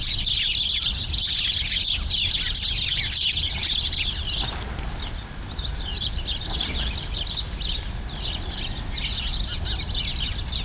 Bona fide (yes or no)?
yes